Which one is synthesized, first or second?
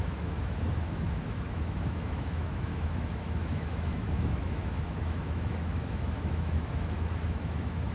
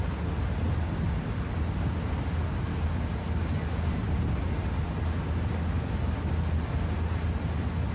first